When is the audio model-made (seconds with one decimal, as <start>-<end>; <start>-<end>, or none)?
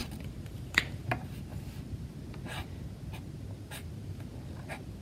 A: 0.0-1.1